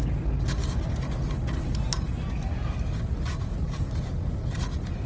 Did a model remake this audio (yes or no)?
no